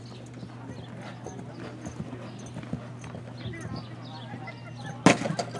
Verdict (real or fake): real